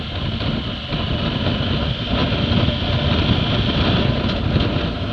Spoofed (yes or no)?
no